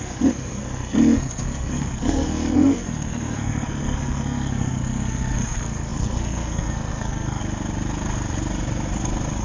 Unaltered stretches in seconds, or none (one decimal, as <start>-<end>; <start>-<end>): 7.4-9.4